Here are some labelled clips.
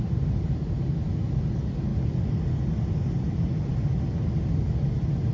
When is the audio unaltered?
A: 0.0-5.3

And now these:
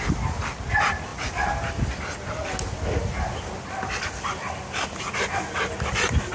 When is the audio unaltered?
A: 0.0-6.3